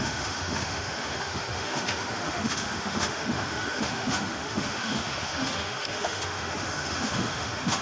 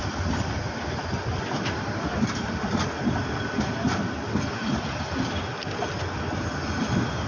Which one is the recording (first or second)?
second